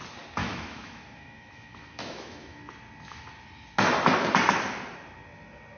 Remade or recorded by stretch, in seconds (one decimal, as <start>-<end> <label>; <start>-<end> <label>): 0.0-0.4 recorded; 0.4-2.6 remade; 2.6-5.8 recorded